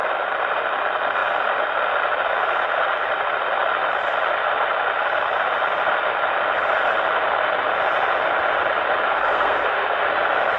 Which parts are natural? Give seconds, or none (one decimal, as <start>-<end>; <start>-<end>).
0.0-9.1; 10.0-10.6